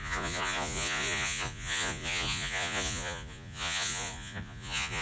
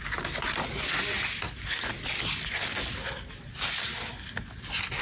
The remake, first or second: first